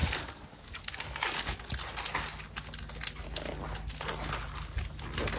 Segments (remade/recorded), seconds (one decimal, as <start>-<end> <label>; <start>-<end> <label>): 0.0-1.6 remade; 1.6-5.4 recorded